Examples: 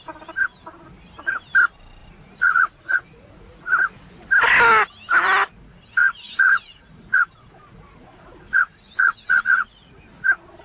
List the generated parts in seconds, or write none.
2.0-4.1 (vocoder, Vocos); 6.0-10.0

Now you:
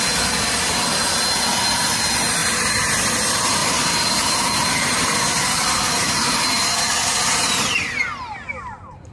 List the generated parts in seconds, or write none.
2.4-3.0 (vocoder, BigVGAN v2); 3.6-5.1

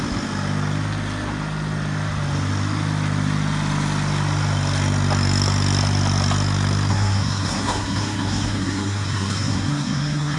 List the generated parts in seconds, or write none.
6.9-10.4 (codec, SNAC)